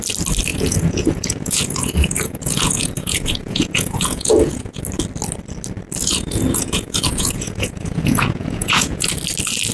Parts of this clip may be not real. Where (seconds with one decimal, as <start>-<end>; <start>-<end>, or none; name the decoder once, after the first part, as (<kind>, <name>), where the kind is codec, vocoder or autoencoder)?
0.5-4.8 (vocoder, Vocos); 6.0-9.1